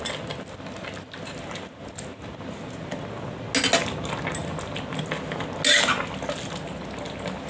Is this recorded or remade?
recorded